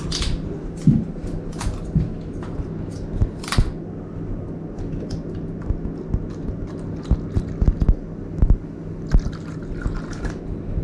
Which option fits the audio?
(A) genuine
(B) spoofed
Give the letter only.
A